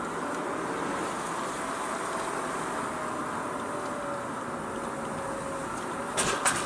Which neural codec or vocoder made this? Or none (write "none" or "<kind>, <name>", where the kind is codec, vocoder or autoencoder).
none